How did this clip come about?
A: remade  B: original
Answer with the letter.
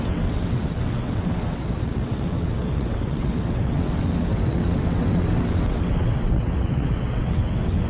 A